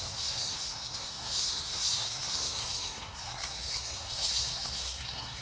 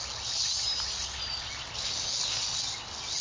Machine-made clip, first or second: first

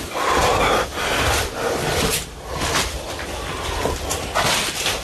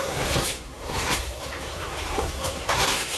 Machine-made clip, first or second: second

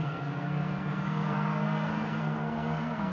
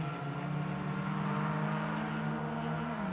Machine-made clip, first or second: first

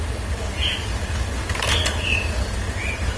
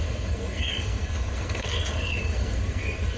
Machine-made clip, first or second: second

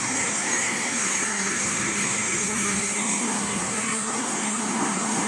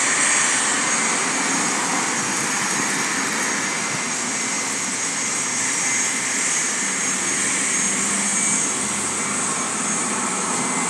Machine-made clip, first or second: first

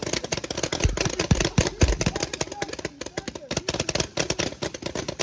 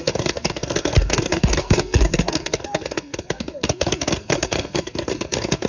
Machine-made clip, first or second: second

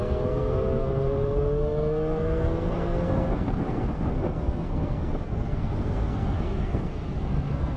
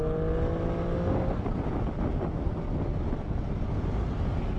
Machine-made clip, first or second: first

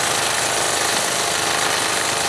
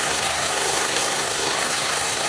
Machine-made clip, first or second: second